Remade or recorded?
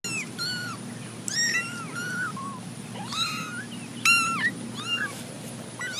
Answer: recorded